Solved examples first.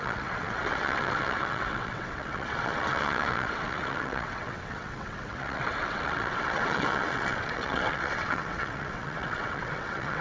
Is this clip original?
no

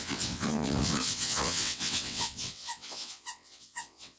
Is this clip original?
no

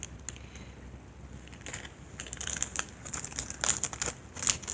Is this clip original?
yes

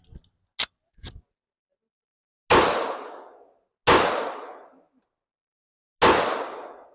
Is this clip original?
yes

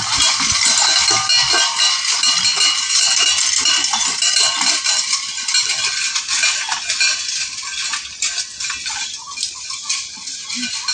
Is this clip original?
yes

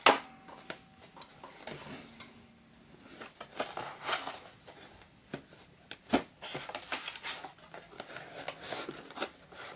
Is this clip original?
yes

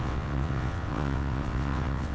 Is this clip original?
no